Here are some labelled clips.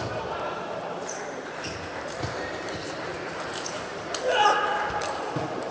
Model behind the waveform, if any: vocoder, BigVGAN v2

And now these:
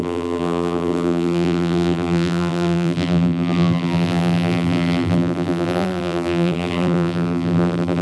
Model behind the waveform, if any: vocoder, BigVGAN v2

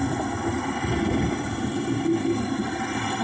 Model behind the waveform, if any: vocoder, BigVGAN v2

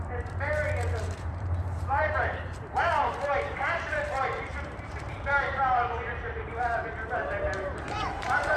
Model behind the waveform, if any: vocoder, BigVGAN v2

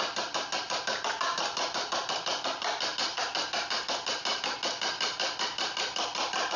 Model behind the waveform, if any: none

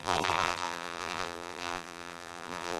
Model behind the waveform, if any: vocoder, BigVGAN v2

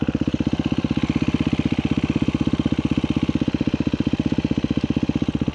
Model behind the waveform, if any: vocoder, BigVGAN v2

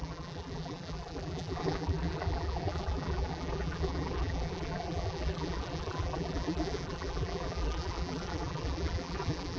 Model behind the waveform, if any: vocoder, BigVGAN v2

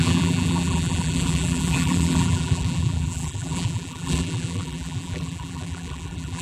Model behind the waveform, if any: vocoder, BigVGAN v2